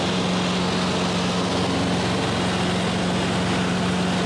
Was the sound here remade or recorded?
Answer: recorded